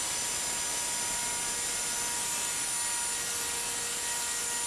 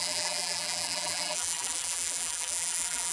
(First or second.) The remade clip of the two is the second